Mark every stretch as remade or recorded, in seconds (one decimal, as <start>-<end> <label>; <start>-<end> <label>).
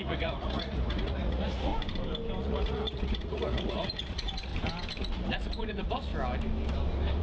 0.0-1.7 remade; 1.7-2.4 recorded; 2.4-4.5 remade; 4.5-5.0 recorded; 5.0-6.1 remade; 6.1-7.2 recorded